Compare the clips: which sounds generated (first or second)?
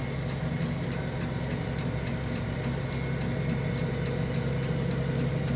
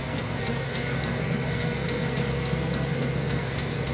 second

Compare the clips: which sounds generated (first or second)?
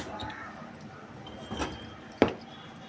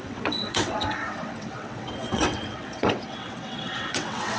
second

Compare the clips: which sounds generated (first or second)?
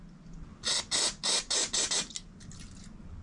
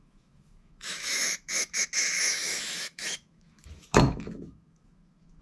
second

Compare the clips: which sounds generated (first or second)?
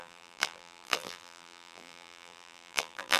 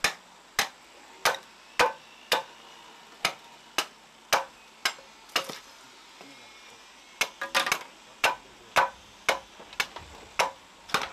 first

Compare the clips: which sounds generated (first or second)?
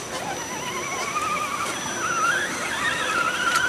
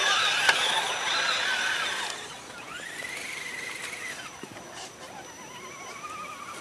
second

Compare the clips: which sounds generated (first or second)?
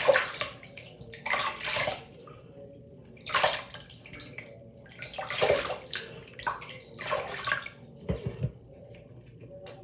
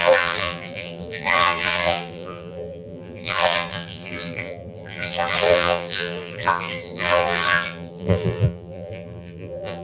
second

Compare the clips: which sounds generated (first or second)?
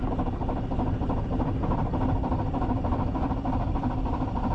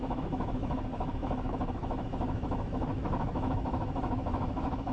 second